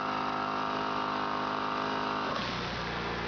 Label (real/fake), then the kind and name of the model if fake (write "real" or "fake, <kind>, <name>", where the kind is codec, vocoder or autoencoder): real